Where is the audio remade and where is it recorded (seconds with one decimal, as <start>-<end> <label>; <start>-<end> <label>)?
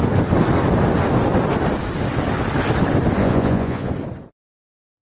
0.0-3.2 recorded; 3.2-3.9 remade; 3.9-5.0 recorded